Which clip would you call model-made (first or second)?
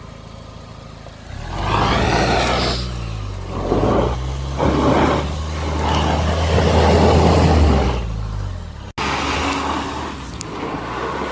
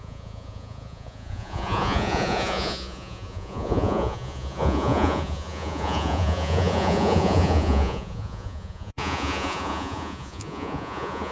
second